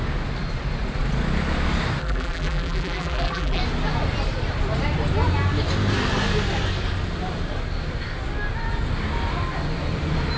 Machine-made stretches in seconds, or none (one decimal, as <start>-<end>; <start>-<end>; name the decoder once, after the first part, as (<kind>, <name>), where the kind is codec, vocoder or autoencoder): 2.0-3.6 (vocoder, BigVGAN v2)